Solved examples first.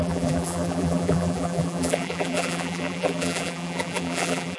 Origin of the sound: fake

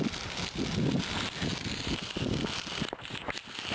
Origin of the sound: real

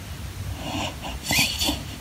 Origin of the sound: real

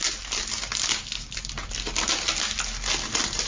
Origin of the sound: real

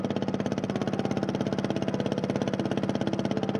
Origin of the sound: real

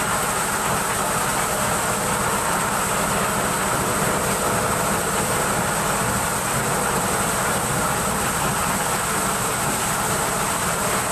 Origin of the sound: real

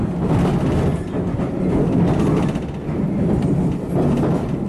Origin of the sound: real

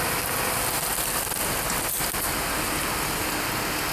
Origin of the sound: real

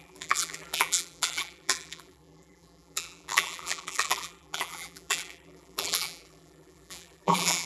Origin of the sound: fake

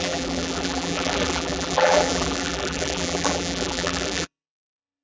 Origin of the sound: fake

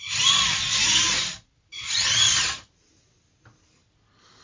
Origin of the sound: real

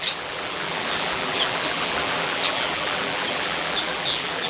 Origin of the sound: fake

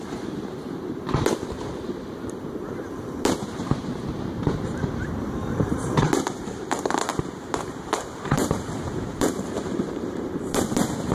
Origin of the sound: fake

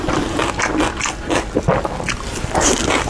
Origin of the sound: fake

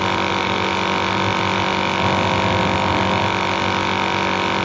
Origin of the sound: real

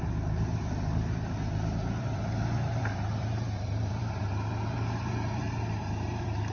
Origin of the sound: fake